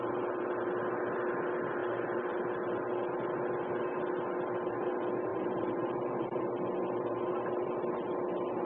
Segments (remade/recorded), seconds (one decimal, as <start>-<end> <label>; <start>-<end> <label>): 0.0-5.3 recorded; 5.3-6.4 remade; 6.4-8.7 recorded